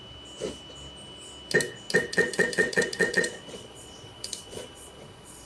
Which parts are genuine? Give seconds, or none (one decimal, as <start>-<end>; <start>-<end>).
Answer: 0.0-2.1